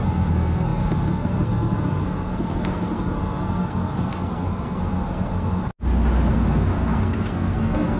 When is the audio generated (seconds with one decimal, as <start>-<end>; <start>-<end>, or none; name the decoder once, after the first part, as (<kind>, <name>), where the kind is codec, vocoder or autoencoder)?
0.0-5.7 (codec, SNAC); 6.3-8.0